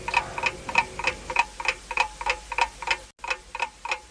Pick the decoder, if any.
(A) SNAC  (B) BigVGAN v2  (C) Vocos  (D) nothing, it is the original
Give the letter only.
D